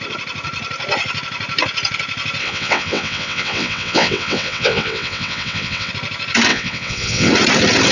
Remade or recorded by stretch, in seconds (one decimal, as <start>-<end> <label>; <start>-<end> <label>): 0.0-2.4 recorded; 2.4-5.9 remade; 5.9-6.5 recorded; 6.5-7.3 remade; 7.3-7.9 recorded